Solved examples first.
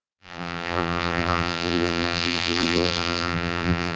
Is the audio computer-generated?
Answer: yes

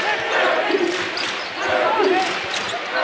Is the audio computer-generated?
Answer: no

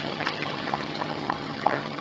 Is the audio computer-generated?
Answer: yes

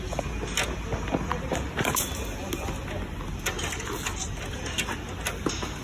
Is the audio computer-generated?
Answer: no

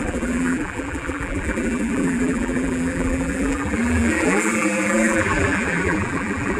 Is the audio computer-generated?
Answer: yes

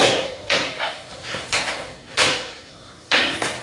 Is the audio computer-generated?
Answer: yes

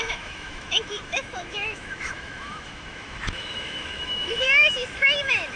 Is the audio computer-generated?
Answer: yes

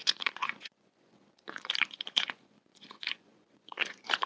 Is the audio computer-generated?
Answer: yes